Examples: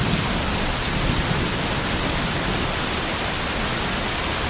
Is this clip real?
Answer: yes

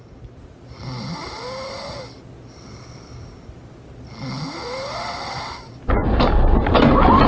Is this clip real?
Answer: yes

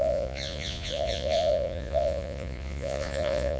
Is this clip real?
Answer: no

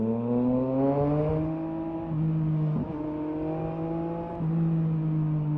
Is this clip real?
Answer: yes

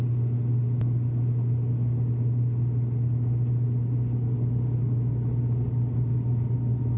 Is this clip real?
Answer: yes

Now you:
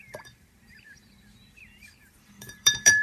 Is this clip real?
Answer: no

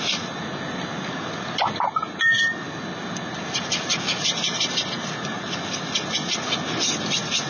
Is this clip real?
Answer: yes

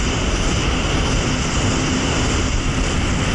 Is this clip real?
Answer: yes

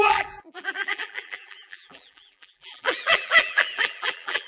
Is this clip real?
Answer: no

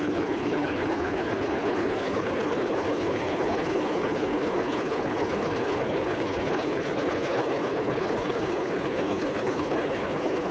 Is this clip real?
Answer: no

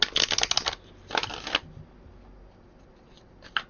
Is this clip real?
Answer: yes